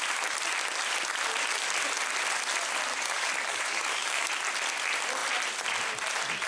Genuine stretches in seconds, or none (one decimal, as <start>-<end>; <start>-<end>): 0.0-2.9; 4.3-6.5